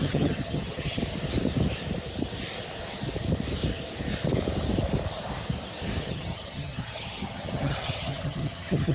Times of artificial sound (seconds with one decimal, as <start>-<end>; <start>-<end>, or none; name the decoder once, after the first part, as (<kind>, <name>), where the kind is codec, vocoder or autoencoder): 0.0-1.0 (vocoder, HiFi-GAN); 6.0-8.9